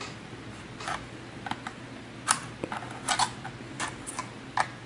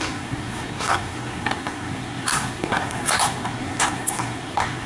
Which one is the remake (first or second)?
second